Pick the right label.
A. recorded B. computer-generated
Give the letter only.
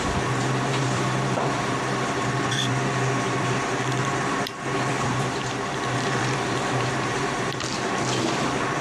B